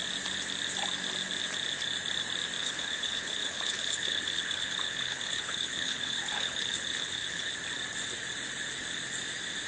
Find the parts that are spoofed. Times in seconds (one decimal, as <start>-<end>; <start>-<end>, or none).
2.6-7.5